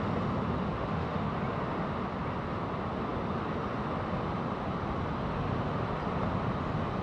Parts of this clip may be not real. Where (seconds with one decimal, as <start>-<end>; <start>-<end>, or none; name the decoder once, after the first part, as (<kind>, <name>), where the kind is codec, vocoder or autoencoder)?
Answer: 0.7-1.3 (autoencoder, DAC-VAE)

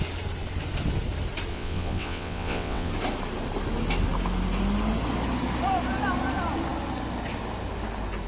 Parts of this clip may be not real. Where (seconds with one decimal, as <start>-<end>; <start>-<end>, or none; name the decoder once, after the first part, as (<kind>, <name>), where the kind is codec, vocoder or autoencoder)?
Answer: 1.5-2.9 (vocoder, WaveNeXt)

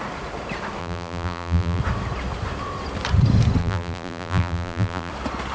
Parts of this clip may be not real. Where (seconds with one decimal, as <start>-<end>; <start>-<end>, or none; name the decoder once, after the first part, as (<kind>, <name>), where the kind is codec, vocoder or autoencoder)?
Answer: 0.8-1.8 (vocoder, BigVGAN v2); 3.6-5.1

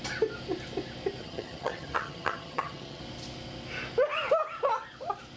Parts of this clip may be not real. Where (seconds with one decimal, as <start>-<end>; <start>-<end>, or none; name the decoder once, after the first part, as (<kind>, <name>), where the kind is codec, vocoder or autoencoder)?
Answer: 1.2-3.0 (vocoder, HiFi-GAN)

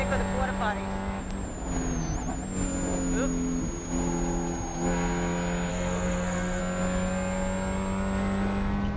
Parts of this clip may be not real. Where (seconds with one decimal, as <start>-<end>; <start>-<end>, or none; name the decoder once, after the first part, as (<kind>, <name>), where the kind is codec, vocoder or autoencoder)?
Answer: 5.7-6.6 (codec, SNAC)

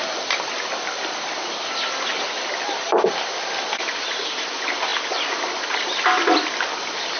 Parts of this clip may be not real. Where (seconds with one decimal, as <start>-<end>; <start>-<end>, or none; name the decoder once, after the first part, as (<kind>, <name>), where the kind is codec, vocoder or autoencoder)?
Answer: none